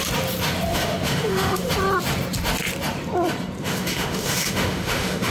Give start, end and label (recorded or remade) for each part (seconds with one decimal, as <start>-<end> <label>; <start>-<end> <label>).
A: 0.0-0.7 recorded; 0.7-1.7 remade; 1.7-3.6 recorded; 3.6-5.3 remade